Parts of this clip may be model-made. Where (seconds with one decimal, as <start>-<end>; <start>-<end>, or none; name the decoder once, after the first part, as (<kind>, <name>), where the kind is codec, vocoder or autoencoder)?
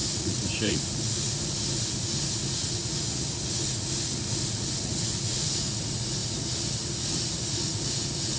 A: 0.0-8.4 (vocoder, Vocos)